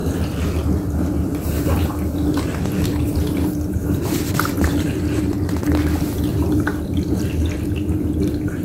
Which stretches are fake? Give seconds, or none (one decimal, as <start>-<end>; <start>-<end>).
0.0-1.9; 6.3-7.3